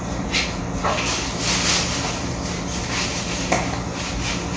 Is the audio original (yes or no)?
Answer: yes